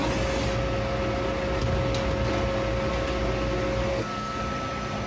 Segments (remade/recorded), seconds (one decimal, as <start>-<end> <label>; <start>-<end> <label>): 0.0-3.9 recorded; 3.9-4.4 remade; 4.4-5.1 recorded